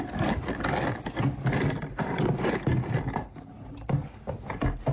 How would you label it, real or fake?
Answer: real